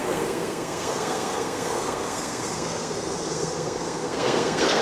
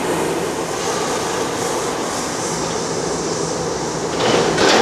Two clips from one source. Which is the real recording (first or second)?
second